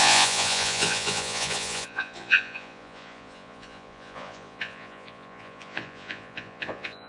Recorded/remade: remade